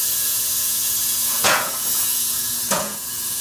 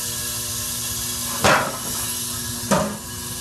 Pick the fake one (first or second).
first